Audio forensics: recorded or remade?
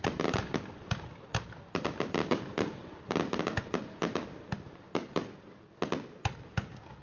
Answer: recorded